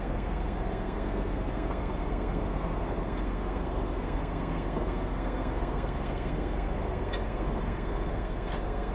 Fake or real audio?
fake